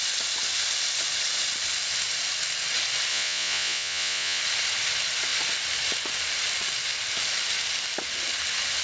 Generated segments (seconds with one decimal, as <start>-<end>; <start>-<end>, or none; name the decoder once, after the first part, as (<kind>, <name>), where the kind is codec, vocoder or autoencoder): 3.1-4.4 (vocoder, Vocos)